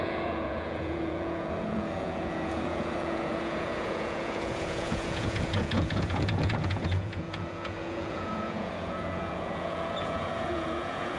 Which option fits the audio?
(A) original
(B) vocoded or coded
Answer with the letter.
B